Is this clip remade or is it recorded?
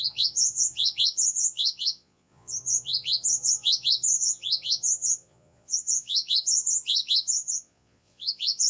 remade